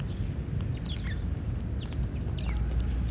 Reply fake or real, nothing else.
real